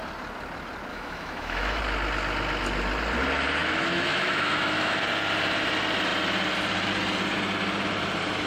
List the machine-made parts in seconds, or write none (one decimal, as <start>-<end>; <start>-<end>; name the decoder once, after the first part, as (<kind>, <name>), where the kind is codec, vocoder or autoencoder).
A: 0.9-1.8 (autoencoder, DAC-VAE); 3.6-5.0